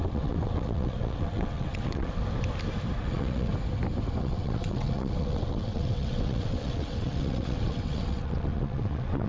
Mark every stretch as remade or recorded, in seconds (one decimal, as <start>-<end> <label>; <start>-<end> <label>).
0.0-2.2 remade; 2.2-3.0 recorded; 3.0-3.5 remade; 3.5-4.2 recorded; 4.2-9.3 remade